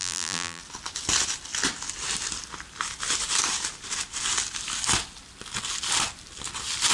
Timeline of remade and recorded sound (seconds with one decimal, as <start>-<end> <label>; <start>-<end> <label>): 0.0-0.6 remade; 0.6-6.9 recorded